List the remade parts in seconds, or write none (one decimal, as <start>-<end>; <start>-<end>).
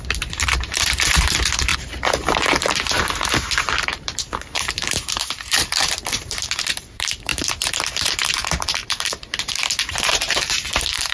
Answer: 0.0-11.1